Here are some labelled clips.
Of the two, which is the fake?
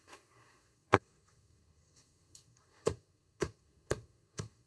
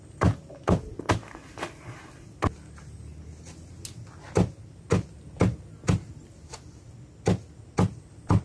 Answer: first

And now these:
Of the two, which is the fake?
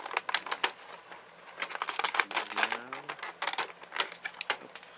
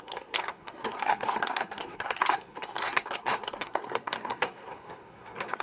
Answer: second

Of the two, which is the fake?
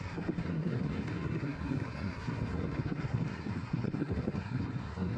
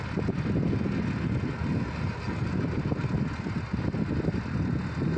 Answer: first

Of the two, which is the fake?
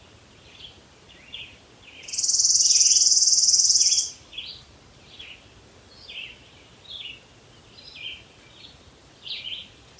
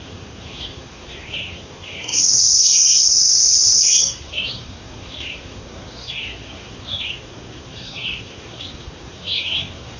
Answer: second